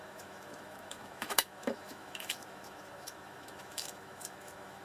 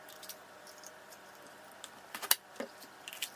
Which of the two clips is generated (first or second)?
first